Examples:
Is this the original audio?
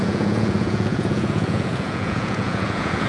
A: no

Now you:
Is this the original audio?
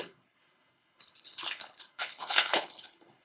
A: no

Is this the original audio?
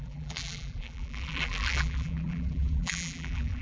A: no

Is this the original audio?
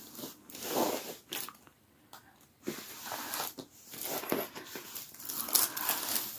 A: yes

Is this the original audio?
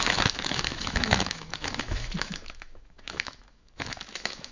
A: no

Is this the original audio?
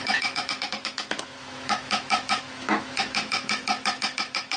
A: no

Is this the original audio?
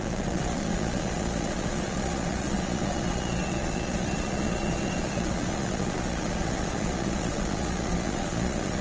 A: no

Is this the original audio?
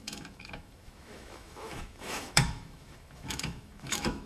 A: no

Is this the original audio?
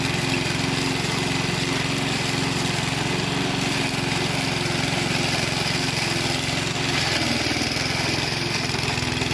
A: yes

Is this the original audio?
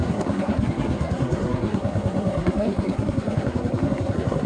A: no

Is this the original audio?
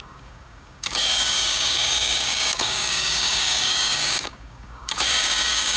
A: no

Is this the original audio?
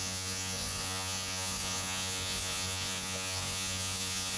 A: no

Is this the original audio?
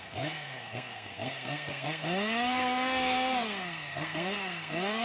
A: no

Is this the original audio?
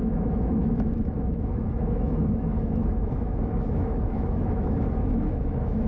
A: no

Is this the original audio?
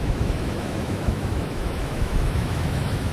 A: no